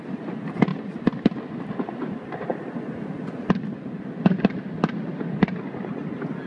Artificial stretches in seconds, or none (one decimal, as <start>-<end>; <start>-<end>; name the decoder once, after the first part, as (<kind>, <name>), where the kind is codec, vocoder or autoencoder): none